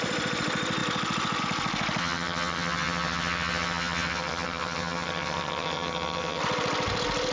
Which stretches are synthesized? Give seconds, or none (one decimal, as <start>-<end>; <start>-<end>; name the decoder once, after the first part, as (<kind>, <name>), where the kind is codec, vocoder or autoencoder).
2.0-6.4 (vocoder, HiFi-GAN)